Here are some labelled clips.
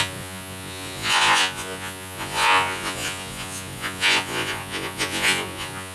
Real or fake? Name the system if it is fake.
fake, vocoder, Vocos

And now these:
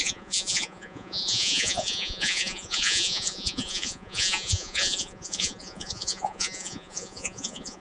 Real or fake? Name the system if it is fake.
fake, vocoder, Vocos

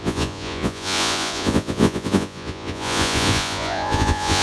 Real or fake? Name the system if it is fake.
fake, vocoder, Vocos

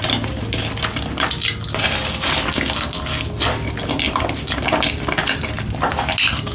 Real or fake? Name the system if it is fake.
real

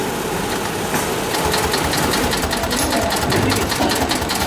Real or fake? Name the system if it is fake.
real